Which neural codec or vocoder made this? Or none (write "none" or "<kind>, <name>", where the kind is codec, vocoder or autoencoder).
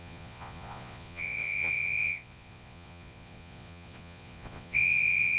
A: vocoder, Vocos